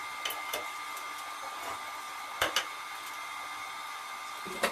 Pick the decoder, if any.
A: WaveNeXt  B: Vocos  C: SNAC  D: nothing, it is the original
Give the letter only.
D